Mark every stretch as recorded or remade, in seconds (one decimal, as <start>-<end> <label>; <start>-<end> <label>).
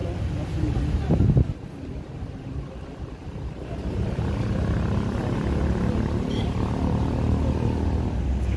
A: 0.0-8.6 recorded